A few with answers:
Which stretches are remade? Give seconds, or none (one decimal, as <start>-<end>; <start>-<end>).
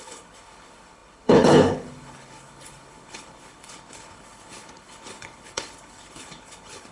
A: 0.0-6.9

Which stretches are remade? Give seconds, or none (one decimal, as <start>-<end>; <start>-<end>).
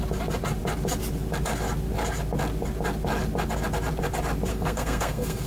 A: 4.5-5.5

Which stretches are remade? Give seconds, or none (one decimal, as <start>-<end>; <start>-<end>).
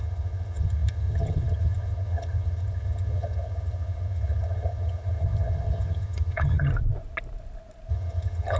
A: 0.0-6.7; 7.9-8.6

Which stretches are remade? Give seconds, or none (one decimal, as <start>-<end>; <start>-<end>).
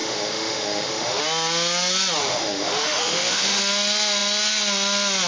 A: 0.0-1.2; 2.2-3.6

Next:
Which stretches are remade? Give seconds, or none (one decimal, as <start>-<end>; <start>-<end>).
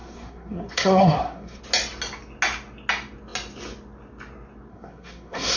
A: 0.0-1.6; 4.7-5.6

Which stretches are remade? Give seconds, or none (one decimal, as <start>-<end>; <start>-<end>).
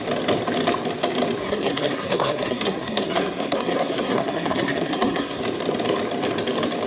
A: 1.4-5.4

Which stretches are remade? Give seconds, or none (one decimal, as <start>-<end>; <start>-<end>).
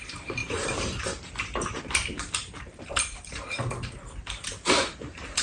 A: 0.0-5.4